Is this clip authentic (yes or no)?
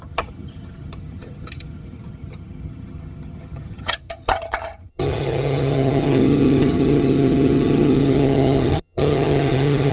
no